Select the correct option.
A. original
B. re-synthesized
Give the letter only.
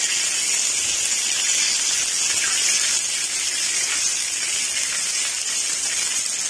A